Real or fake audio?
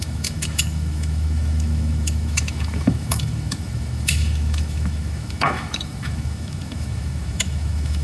fake